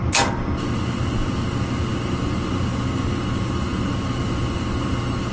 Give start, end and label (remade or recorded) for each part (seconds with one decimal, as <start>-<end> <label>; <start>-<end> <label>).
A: 0.0-5.3 recorded